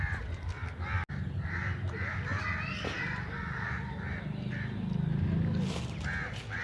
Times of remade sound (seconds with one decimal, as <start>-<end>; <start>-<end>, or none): none